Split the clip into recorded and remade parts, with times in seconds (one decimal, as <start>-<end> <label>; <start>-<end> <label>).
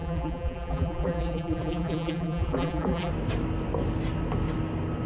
0.0-3.1 remade; 3.1-5.1 recorded